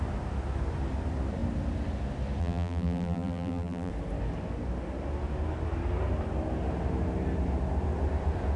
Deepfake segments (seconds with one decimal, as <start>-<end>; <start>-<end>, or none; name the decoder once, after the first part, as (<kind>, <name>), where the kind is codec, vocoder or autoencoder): 2.4-3.9 (vocoder, BigVGAN v2)

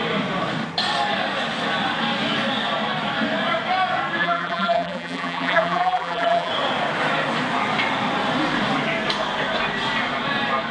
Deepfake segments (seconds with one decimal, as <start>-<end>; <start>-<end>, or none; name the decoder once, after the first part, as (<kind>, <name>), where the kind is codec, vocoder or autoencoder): 4.2-6.5 (vocoder, BigVGAN v2)

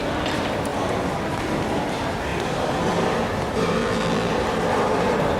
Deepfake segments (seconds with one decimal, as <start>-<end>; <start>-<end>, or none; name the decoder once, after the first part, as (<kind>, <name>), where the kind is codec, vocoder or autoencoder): 3.8-4.3 (vocoder, BigVGAN v2)

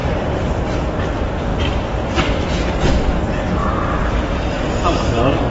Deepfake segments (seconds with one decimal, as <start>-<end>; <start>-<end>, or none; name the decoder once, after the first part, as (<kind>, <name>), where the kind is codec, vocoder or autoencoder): 0.0-1.0 (vocoder, BigVGAN v2); 3.6-4.6